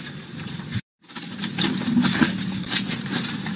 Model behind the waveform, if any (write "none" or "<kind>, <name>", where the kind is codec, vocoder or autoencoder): none